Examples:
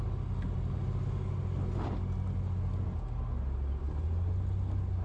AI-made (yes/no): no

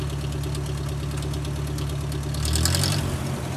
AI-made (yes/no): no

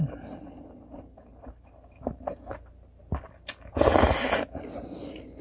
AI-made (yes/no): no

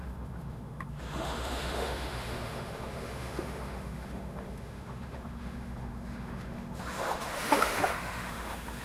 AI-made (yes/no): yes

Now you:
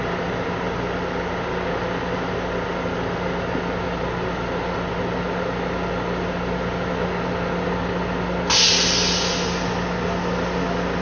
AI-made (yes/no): no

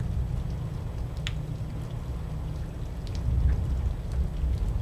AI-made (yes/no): no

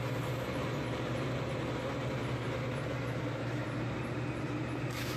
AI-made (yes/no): yes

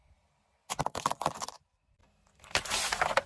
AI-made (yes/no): no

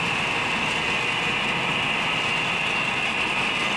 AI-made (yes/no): no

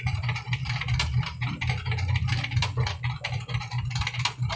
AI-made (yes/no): no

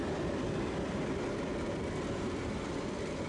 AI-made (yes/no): no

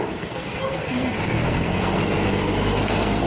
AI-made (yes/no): yes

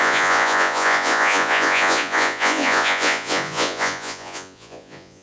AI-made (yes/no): yes